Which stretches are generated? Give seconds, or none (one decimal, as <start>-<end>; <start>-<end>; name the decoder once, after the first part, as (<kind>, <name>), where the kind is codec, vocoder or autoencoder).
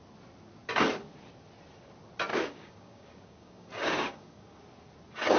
2.3-4.6 (codec, DAC)